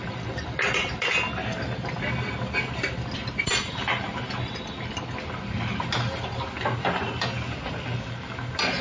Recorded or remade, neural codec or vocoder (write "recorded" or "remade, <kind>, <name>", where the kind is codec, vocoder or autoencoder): recorded